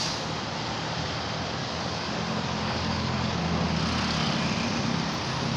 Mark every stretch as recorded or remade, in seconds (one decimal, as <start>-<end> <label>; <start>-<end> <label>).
0.0-1.6 recorded; 1.6-3.4 remade; 3.4-5.6 recorded